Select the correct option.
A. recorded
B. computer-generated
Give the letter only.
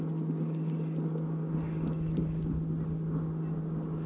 A